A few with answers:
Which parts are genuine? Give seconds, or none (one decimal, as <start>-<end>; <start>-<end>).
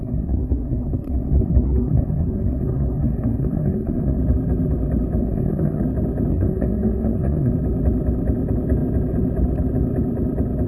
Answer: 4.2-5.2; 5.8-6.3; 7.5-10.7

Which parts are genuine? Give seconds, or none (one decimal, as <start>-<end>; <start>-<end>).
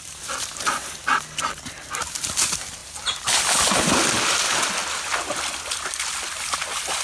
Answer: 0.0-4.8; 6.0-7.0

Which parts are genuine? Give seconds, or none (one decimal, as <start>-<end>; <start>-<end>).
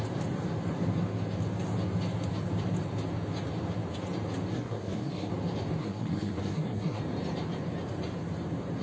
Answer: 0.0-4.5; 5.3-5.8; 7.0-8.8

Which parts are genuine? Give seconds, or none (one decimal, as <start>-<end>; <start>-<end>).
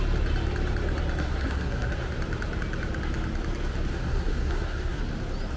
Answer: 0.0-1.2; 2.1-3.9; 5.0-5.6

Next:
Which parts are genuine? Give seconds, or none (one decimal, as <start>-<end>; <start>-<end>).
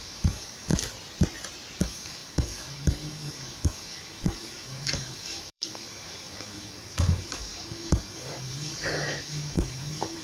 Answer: 0.7-1.8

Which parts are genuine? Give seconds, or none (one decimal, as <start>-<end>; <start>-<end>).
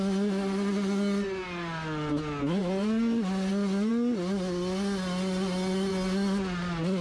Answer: 0.0-7.0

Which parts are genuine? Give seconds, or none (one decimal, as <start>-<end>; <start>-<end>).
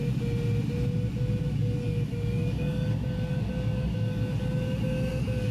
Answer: 0.0-1.4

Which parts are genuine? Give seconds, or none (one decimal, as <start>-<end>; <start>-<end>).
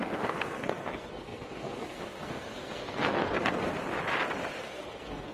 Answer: 3.7-4.6